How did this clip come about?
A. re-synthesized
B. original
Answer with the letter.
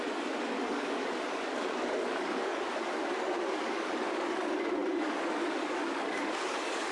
A